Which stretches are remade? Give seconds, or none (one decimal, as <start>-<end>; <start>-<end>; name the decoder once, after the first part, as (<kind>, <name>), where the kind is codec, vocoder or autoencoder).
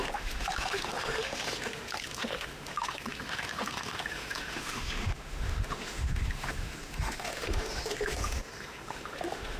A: 0.0-9.6 (autoencoder, DAC-VAE)